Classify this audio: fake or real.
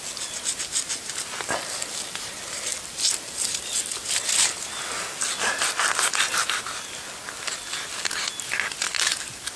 real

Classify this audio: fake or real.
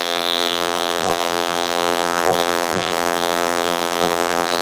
fake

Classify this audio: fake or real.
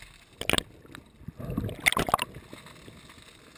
real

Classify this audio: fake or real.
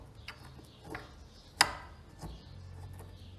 real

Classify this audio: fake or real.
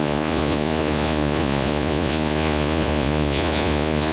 fake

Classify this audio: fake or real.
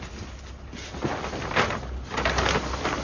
real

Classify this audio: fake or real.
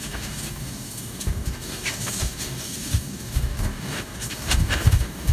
fake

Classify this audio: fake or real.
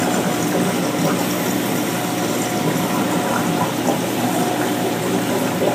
real